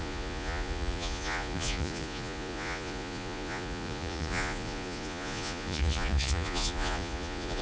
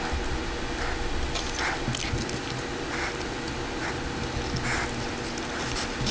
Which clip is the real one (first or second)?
second